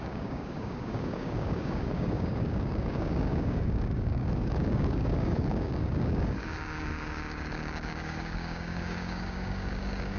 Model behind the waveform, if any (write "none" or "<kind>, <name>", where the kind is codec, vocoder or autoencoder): codec, DAC